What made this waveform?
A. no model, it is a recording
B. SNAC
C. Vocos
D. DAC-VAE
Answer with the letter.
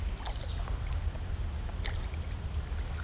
A